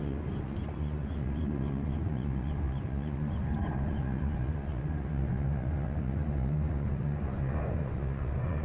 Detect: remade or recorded remade